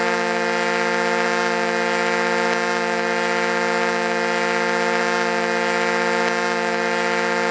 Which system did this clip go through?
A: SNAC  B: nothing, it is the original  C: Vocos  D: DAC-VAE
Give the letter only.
B